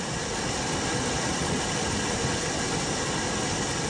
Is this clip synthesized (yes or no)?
no